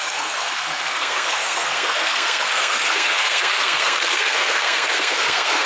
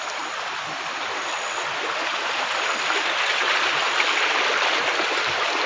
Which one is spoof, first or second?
first